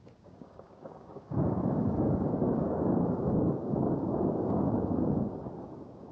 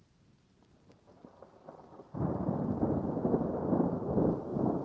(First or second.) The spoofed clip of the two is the first